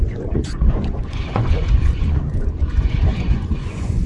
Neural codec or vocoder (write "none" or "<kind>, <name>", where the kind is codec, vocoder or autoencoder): vocoder, Vocos